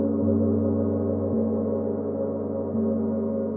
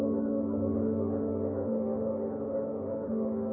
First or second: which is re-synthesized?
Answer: second